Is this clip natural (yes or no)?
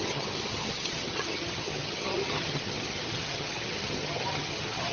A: no